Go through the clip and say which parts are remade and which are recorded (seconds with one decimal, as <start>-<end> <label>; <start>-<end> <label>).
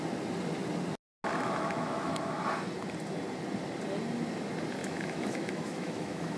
0.0-1.3 recorded; 1.3-2.4 remade; 2.4-4.8 recorded; 4.8-6.4 remade